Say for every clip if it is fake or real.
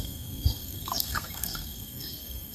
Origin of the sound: fake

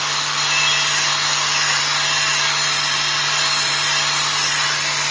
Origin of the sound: real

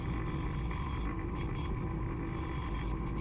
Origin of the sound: real